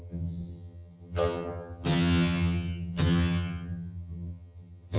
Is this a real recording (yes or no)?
no